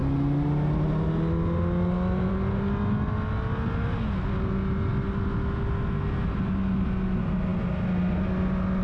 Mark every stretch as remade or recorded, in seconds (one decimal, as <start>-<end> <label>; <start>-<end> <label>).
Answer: 0.0-8.8 recorded